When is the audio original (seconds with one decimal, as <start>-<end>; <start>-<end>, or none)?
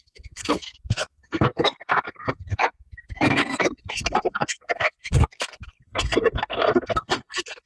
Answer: none